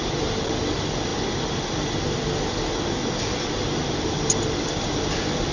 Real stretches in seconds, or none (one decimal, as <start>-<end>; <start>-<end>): 0.0-5.5